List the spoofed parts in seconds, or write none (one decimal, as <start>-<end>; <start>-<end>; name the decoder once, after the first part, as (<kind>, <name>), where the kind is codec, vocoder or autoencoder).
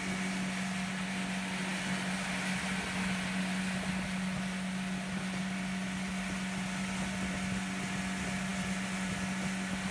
none